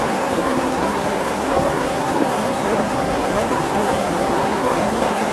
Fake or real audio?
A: fake